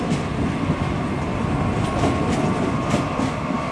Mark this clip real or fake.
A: real